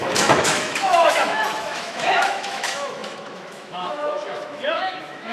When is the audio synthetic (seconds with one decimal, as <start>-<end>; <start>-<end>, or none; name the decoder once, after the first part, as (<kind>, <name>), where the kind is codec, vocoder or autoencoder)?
0.0-5.3 (autoencoder, DAC-VAE)